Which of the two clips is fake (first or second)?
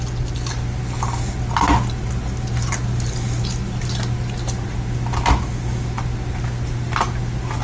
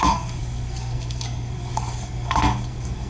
second